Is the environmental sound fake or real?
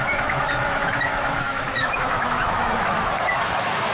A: fake